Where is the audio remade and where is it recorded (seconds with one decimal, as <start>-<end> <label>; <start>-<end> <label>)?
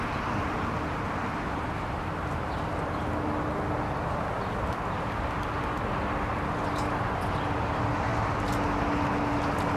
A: 0.0-9.8 recorded